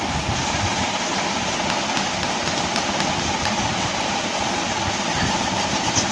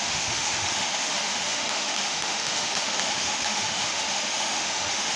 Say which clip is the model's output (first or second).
second